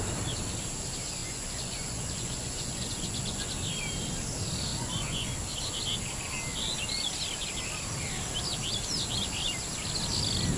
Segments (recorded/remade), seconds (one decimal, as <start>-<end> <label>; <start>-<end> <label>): 0.0-1.2 recorded; 1.2-3.5 remade; 3.5-4.7 recorded; 4.7-5.3 remade; 5.3-10.6 recorded